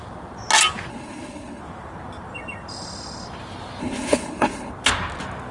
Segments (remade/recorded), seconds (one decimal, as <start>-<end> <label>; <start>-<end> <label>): 0.0-0.9 recorded; 0.9-1.6 remade; 1.6-3.8 recorded; 3.8-4.7 remade; 4.7-5.5 recorded